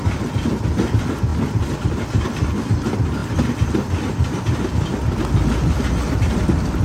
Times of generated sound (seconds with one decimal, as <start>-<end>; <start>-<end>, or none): none

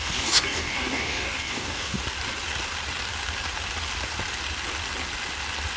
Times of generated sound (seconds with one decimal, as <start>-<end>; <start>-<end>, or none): 0.0-2.0

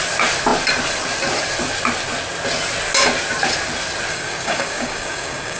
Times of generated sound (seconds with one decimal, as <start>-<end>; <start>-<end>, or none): 4.1-5.6